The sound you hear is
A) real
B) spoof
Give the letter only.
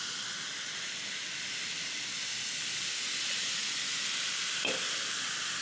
A